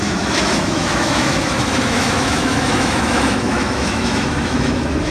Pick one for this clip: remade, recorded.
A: remade